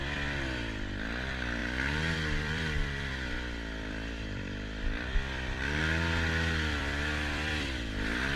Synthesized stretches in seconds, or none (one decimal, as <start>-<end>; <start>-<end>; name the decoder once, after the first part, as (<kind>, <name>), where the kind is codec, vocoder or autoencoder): 1.6-5.8 (vocoder, BigVGAN v2); 6.8-8.4